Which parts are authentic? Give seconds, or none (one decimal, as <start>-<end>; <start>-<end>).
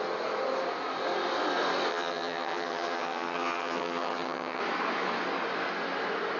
0.0-1.9; 4.6-6.4